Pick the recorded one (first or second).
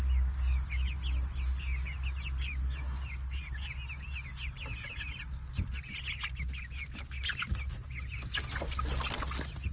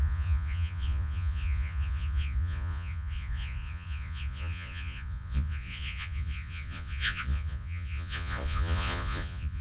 first